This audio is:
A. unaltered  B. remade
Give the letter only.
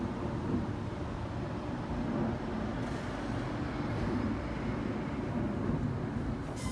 A